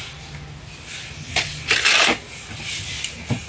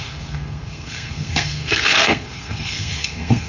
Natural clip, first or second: first